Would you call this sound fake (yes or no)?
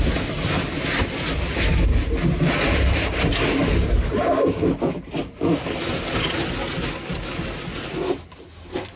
no